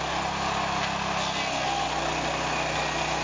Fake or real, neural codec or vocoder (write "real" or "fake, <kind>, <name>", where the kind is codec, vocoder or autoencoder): real